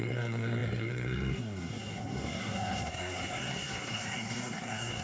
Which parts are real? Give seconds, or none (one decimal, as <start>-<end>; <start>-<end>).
none